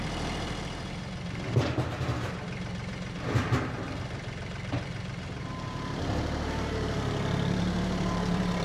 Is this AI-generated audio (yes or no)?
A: yes